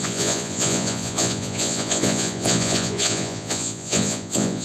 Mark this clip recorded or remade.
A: remade